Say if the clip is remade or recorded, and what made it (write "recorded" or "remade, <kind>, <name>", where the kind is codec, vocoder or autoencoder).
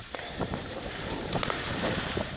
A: remade, vocoder, BigVGAN v2